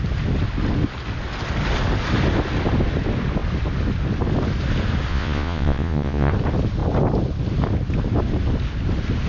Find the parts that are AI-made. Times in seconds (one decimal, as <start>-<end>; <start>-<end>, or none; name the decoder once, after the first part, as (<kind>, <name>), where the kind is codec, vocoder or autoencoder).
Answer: 5.1-6.3 (vocoder, Vocos)